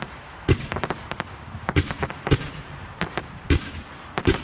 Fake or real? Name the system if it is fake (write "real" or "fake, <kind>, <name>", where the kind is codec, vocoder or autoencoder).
fake, vocoder, BigVGAN v2